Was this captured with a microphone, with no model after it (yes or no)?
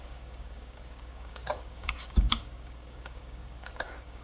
no